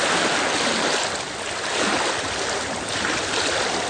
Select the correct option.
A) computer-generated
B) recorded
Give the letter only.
B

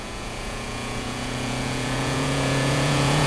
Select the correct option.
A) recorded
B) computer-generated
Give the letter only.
B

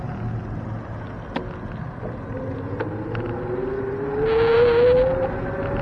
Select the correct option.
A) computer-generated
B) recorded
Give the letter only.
B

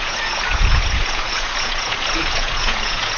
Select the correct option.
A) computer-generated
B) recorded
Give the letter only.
A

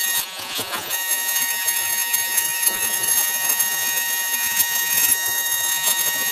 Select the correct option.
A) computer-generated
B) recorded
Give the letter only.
A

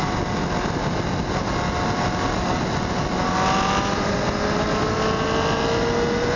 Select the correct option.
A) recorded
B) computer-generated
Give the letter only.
A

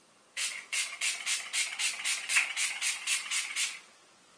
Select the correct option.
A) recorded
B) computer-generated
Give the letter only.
B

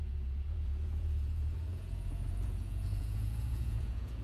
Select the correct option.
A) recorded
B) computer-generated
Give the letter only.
B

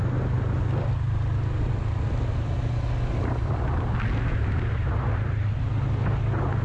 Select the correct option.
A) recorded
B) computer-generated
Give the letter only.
A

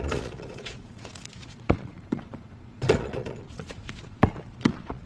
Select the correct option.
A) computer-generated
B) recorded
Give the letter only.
A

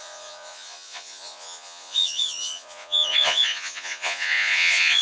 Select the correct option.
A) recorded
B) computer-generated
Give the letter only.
B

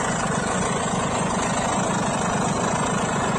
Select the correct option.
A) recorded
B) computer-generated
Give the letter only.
B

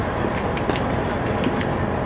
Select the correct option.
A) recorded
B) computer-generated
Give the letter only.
A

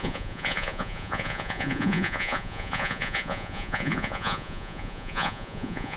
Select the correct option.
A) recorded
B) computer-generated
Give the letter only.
B